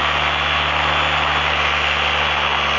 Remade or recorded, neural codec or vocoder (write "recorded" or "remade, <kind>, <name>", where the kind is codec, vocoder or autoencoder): recorded